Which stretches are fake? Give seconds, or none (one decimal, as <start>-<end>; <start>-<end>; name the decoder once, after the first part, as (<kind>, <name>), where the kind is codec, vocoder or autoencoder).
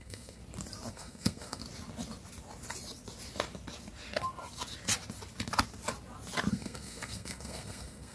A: 0.0-0.4 (codec, SNAC); 0.9-1.6; 6.5-8.1